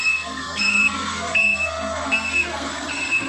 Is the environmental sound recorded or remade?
remade